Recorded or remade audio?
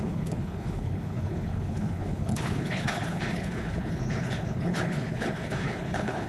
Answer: remade